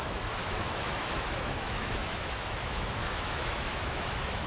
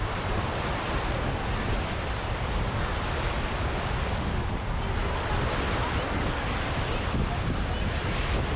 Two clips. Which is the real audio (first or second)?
second